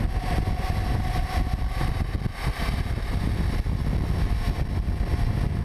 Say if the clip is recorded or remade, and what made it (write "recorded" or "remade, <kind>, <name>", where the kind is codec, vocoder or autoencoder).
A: recorded